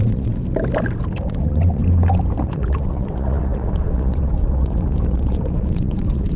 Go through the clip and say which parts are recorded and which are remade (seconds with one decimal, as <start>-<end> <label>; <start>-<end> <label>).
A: 0.0-0.4 remade; 0.4-1.3 recorded; 1.3-1.8 remade; 1.8-2.4 recorded; 2.4-6.4 remade